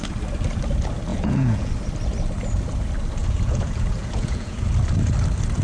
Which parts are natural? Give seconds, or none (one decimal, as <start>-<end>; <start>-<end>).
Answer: 0.0-1.1; 1.7-3.2; 4.7-5.6